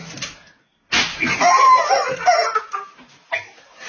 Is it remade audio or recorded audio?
recorded